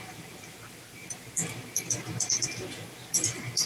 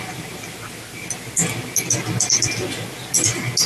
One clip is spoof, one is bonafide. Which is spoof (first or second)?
first